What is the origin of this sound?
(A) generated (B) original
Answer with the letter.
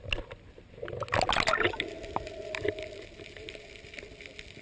B